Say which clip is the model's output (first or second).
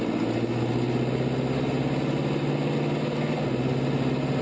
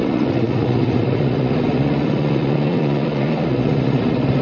second